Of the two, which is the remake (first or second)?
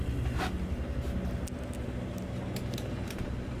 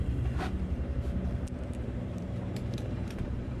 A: second